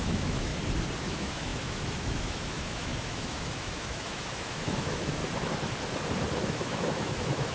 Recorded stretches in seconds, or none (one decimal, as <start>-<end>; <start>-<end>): 0.5-1.0; 5.2-6.4